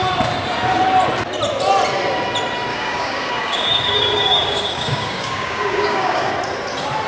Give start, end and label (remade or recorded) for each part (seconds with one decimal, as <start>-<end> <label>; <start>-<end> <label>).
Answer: 0.0-2.7 recorded; 2.7-6.3 remade; 6.3-7.1 recorded